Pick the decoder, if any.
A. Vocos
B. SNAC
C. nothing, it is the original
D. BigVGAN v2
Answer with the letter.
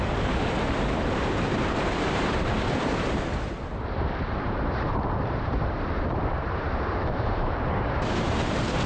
D